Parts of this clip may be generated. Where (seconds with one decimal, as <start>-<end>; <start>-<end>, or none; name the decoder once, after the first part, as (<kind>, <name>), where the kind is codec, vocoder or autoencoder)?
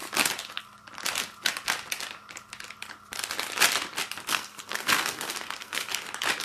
4.3-5.9 (codec, SNAC)